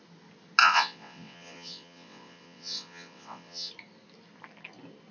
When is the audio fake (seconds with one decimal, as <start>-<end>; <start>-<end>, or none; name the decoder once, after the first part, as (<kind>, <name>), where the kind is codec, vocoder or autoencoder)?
0.6-3.7 (vocoder, WaveNeXt)